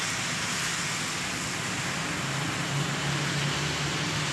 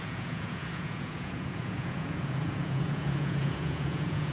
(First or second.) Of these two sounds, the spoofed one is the second